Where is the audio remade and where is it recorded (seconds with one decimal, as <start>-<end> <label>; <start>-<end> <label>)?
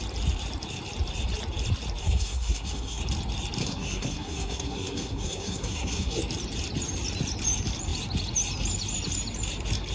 0.0-2.0 recorded; 2.0-3.0 remade; 3.0-3.6 recorded; 3.6-6.2 remade; 6.2-9.9 recorded